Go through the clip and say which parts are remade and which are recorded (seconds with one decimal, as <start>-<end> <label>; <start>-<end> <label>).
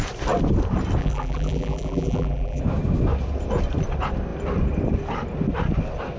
0.0-1.0 recorded; 1.0-2.6 remade; 2.6-6.2 recorded